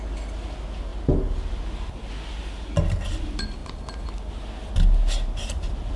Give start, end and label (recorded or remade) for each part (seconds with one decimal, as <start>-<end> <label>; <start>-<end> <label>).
0.0-6.0 recorded

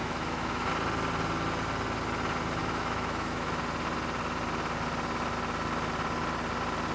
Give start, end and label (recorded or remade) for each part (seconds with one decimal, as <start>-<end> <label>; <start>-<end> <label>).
0.0-0.7 remade; 0.7-2.6 recorded; 2.6-3.6 remade; 3.6-6.9 recorded